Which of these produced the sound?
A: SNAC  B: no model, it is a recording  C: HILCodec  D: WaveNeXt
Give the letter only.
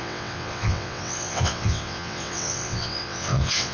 D